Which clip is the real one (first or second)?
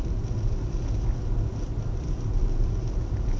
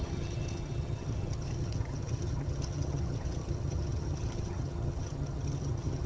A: first